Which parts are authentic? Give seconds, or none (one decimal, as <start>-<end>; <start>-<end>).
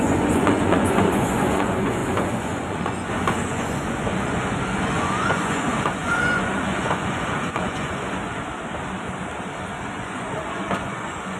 8.5-9.7